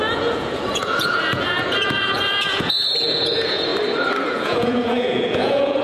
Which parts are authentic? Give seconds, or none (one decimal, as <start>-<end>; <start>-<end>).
3.7-4.3